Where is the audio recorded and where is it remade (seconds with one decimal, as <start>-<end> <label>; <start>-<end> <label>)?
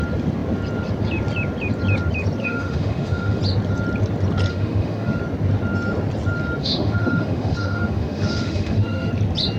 0.0-2.4 recorded; 2.4-3.4 remade; 3.4-4.5 recorded; 4.5-5.2 remade; 5.2-6.6 recorded; 6.6-9.1 remade; 9.1-9.6 recorded